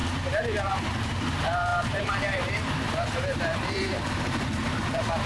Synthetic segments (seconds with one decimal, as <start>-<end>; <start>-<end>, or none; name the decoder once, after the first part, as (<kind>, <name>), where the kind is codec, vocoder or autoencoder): 0.7-5.3 (vocoder, BigVGAN v2)